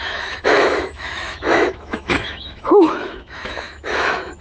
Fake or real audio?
fake